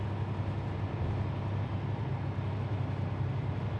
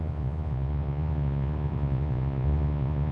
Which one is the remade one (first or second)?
second